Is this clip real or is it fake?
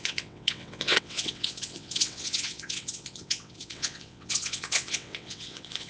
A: fake